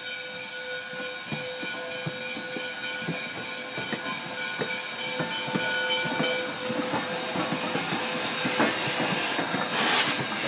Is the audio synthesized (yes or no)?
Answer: no